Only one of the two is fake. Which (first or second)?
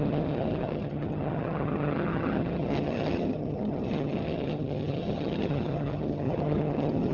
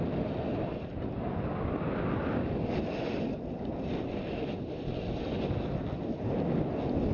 first